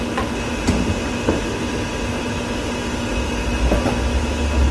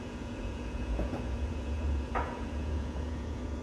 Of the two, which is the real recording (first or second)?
first